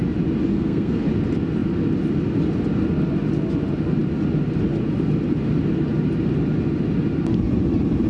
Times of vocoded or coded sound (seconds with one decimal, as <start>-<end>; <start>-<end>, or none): 0.5-1.0